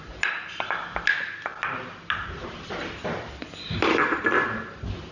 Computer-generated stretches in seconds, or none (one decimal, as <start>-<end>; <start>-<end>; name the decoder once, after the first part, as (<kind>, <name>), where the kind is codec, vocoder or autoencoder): none